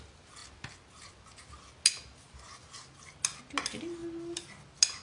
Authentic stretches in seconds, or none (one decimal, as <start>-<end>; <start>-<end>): 0.0-5.0